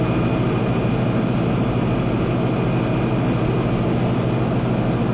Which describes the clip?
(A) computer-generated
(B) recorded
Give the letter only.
B